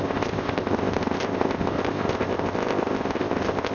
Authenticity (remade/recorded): remade